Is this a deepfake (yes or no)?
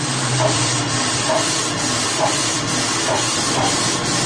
yes